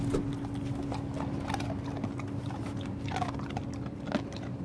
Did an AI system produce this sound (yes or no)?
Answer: no